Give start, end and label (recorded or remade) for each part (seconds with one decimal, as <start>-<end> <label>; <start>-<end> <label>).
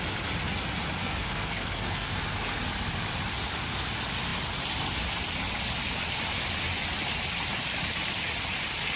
0.0-1.0 recorded; 1.0-2.1 remade; 2.1-9.0 recorded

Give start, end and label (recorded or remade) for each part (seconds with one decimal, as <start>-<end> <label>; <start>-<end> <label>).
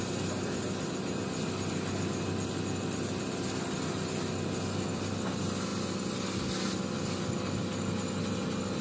0.0-8.8 recorded